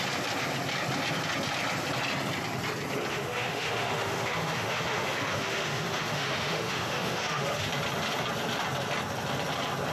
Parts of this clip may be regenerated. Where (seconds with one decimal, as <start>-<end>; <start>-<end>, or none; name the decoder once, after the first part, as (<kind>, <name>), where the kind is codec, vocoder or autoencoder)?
3.1-7.7 (autoencoder, DAC-VAE)